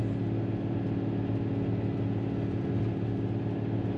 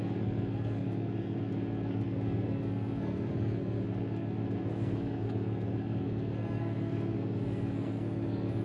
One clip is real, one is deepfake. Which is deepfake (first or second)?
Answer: second